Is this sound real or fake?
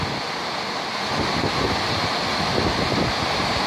real